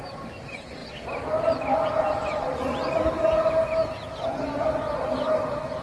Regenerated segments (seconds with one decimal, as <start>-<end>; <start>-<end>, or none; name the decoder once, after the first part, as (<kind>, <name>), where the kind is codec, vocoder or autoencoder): 2.2-3.0 (vocoder, Vocos)

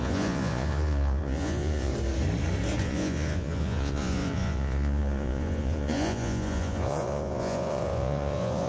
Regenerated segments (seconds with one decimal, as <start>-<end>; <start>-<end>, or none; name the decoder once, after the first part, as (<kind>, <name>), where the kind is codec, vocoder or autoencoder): 0.0-1.9 (vocoder, Vocos); 2.8-8.7

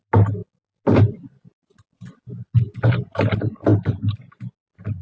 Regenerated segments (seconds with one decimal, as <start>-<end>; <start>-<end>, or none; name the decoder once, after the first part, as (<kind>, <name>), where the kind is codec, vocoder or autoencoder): none

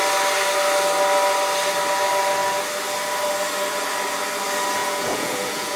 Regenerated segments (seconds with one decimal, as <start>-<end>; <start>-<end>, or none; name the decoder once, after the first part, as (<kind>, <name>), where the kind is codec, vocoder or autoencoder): 4.8-5.8 (vocoder, Vocos)

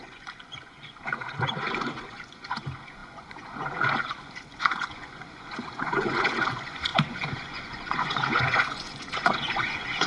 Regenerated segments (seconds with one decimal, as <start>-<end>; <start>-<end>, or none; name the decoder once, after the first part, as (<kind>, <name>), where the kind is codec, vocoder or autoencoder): 0.0-10.1 (vocoder, Vocos)

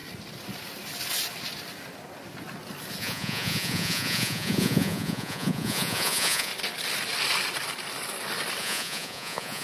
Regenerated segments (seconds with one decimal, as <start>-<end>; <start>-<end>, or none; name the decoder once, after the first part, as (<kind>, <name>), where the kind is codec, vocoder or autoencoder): 3.0-6.5 (vocoder, Vocos); 8.6-9.6

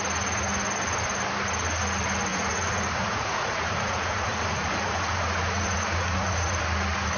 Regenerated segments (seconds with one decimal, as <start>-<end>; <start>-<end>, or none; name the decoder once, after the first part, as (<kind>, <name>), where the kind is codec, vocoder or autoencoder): 2.3-6.6 (vocoder, Vocos)

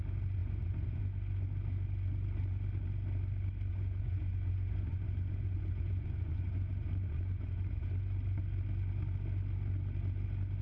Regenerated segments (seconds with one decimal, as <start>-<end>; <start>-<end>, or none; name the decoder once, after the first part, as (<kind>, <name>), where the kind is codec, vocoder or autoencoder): 0.4-1.0 (vocoder, Vocos); 3.7-7.9